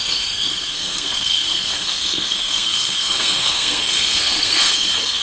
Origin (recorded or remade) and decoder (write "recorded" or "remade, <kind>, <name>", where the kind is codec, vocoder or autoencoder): remade, codec, SNAC